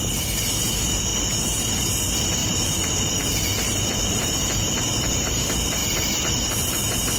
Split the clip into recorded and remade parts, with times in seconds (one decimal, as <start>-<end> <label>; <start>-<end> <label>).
0.0-1.1 remade; 1.1-1.7 recorded; 1.7-5.8 remade; 5.8-6.7 recorded; 6.7-7.2 remade